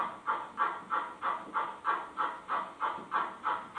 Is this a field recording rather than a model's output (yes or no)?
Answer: yes